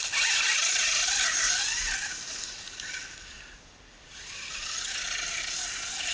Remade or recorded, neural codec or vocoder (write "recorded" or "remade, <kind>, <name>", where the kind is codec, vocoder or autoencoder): recorded